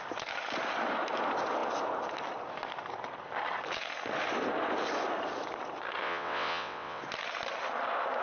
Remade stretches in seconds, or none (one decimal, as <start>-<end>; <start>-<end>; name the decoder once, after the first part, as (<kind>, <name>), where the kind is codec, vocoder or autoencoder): 6.0-7.0 (vocoder, WaveNeXt)